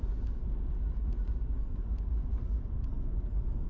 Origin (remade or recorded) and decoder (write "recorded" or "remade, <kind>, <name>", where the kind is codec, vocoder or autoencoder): recorded